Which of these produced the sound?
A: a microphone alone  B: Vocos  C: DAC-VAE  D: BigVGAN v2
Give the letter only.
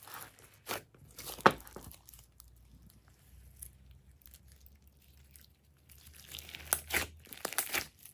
A